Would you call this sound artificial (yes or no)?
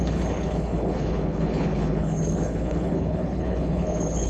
yes